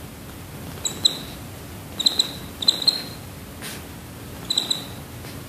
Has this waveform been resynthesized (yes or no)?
no